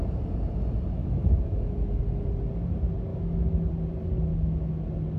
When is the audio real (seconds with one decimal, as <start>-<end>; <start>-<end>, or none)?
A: 0.0-1.0; 2.0-3.1; 3.7-4.3; 4.8-5.2